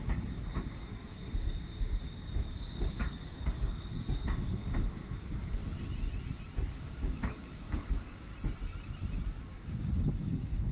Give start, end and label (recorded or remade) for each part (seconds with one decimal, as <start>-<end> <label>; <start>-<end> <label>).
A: 0.0-5.6 remade; 5.6-6.8 recorded; 6.8-8.3 remade; 8.3-9.4 recorded; 9.4-10.7 remade